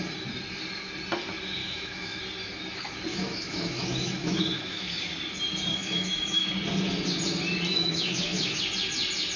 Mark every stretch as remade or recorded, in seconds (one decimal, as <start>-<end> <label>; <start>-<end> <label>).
0.0-1.6 recorded; 1.6-2.2 remade; 2.2-3.1 recorded; 3.1-5.1 remade; 5.1-5.7 recorded; 5.7-6.5 remade; 6.5-7.7 recorded; 7.7-8.6 remade; 8.6-9.4 recorded